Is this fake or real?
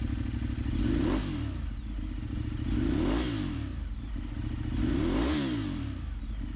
real